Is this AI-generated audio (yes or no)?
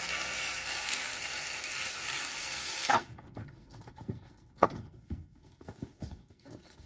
yes